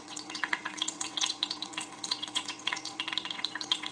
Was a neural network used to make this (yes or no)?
yes